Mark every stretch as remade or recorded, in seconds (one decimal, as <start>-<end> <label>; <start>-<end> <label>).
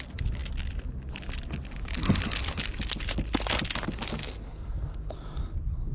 0.0-4.2 recorded; 4.2-5.0 remade; 5.0-5.9 recorded